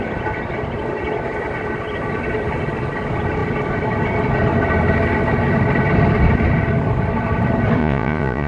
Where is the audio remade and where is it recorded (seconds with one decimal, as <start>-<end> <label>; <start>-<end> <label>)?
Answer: 0.0-7.8 recorded; 7.8-8.5 remade